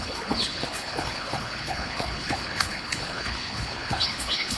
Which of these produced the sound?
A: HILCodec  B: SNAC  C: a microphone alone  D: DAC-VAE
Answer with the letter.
A